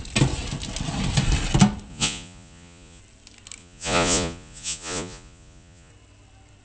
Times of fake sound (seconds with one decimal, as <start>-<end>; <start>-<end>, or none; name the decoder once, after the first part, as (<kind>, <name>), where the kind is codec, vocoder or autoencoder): 1.9-3.0 (vocoder, Vocos); 3.6-5.9